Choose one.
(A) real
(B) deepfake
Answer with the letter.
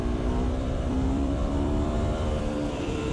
B